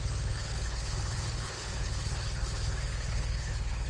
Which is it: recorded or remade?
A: remade